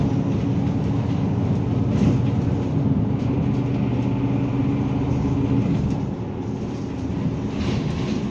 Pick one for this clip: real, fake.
real